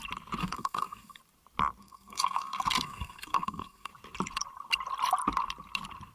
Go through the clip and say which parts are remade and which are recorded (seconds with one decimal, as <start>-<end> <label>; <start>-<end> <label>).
0.0-0.4 recorded; 0.4-1.2 remade; 1.2-1.8 recorded; 1.8-3.9 remade; 3.9-6.1 recorded